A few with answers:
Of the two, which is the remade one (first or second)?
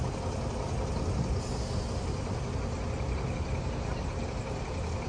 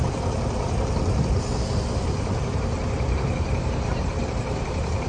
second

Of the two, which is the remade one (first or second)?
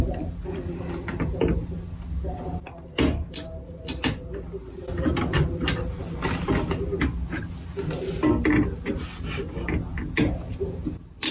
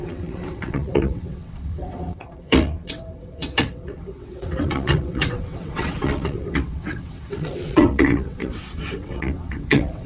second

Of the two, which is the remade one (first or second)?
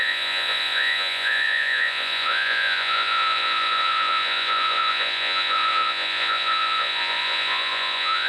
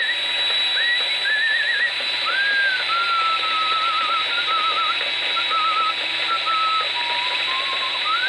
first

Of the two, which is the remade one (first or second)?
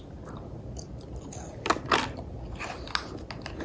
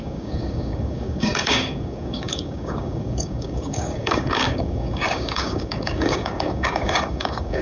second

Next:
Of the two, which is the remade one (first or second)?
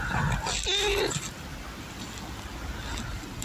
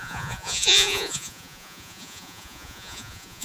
second